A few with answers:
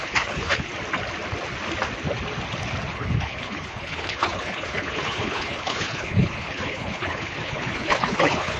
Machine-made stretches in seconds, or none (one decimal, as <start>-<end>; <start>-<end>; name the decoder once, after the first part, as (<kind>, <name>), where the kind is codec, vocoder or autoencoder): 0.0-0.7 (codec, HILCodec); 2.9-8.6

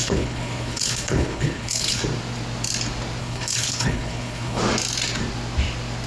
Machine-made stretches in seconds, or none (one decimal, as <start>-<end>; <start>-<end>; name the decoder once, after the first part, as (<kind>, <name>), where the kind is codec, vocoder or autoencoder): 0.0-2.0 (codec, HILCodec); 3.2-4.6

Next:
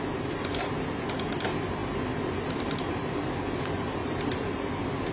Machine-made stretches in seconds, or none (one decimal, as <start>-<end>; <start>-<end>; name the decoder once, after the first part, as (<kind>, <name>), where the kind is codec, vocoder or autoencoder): none